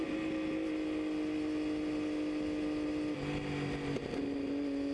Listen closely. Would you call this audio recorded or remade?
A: recorded